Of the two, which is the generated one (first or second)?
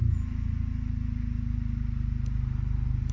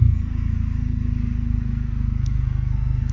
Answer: second